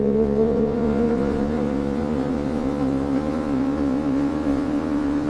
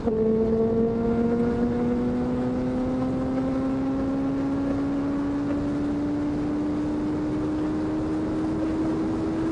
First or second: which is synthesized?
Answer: first